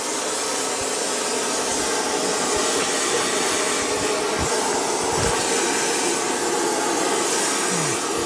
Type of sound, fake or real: real